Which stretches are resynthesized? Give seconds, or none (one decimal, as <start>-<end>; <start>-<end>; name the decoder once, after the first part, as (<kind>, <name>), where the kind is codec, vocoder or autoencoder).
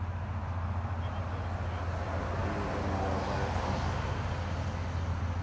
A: none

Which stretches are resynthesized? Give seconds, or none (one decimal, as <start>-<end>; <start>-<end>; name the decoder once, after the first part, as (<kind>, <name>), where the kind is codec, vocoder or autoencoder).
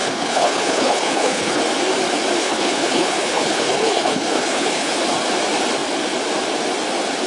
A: 0.0-1.6 (codec, HILCodec); 2.4-5.0